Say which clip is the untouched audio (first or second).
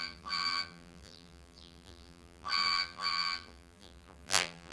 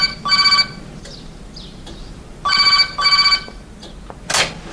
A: second